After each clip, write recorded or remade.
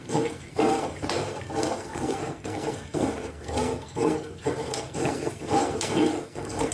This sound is remade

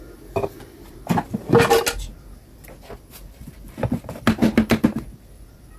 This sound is recorded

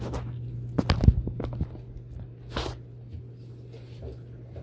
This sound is recorded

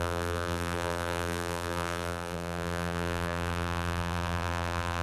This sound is remade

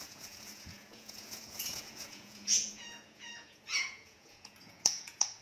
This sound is remade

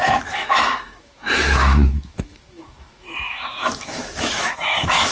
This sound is remade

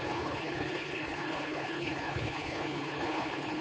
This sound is remade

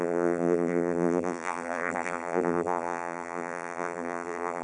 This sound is remade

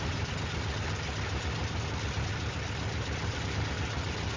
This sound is recorded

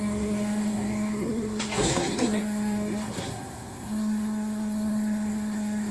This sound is remade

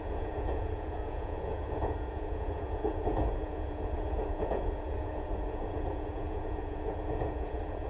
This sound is remade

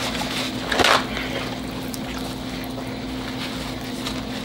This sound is recorded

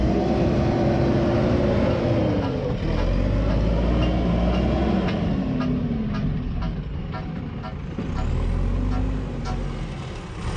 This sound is recorded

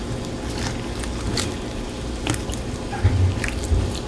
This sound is recorded